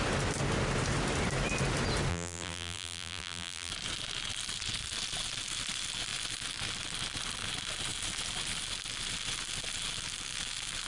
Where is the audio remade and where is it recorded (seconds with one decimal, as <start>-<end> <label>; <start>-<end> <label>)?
0.0-2.1 recorded; 2.1-3.7 remade; 3.7-10.9 recorded